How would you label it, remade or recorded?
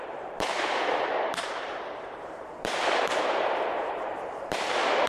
remade